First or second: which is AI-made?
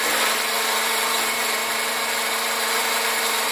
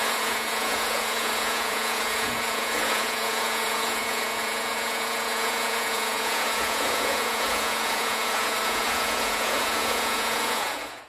second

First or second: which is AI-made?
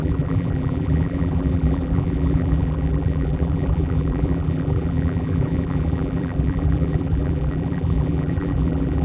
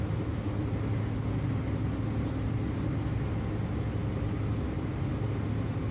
first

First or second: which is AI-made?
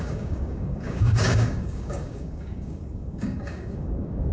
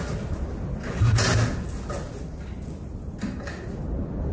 first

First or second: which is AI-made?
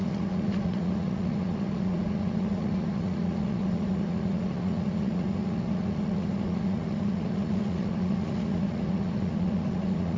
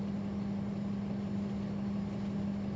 first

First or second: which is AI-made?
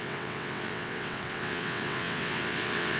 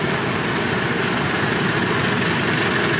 first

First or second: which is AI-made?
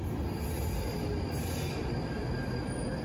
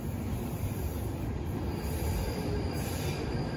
second